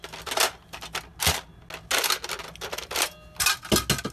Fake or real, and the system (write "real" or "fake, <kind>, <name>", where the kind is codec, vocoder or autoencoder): real